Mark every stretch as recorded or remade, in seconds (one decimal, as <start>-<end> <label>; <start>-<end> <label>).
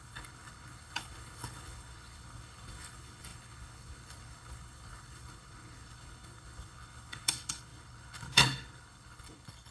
0.0-9.7 remade